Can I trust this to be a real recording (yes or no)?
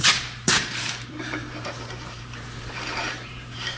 no